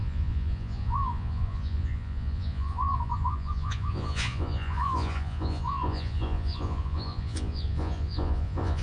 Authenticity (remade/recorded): remade